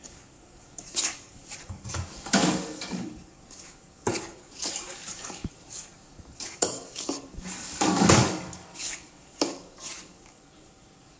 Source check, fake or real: fake